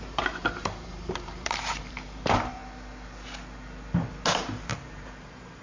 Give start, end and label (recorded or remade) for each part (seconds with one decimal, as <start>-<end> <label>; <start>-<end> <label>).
0.0-2.6 remade; 2.6-4.3 recorded; 4.3-5.6 remade